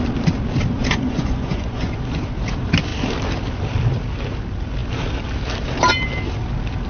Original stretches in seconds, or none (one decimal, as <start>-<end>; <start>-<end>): 0.0-0.7; 2.0-6.9

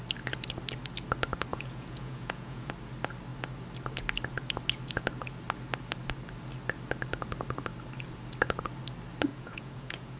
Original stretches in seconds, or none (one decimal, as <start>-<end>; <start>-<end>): 0.0-1.5; 2.7-9.3

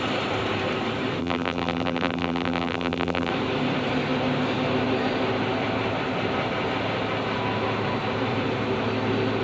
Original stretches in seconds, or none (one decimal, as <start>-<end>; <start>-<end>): 0.0-1.2; 3.3-9.4

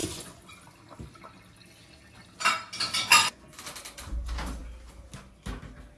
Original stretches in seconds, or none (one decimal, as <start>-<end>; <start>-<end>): 0.5-3.1; 3.6-6.0

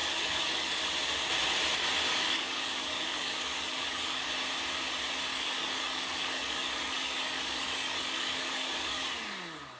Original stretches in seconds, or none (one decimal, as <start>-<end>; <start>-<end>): 0.8-2.1; 4.3-5.3; 9.0-9.8